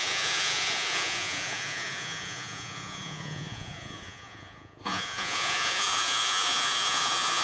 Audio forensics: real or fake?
fake